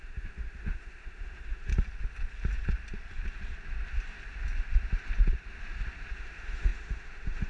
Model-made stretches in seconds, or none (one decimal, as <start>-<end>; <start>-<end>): 0.0-1.7; 6.2-7.5

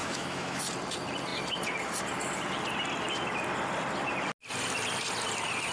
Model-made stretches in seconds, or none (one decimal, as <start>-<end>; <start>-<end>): 0.0-0.6

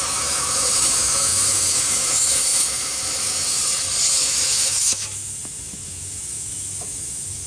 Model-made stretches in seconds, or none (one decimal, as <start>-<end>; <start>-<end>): 0.0-3.6; 4.1-7.5

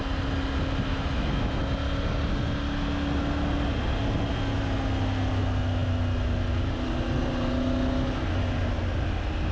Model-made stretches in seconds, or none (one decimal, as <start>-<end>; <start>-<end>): 0.9-1.6

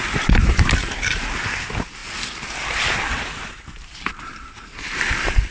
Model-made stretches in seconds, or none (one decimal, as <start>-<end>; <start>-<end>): none

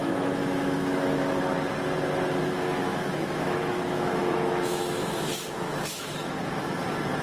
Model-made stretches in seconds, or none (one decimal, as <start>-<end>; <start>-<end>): 0.0-1.4; 2.4-6.7

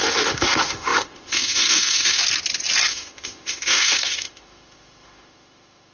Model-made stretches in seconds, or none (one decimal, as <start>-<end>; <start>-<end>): 0.0-2.2; 2.9-5.9